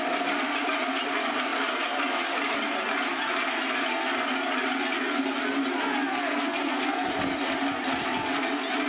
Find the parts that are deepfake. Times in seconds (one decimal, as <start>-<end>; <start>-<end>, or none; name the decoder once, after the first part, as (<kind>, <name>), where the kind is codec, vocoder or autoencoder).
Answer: 6.1-7.1 (codec, SNAC)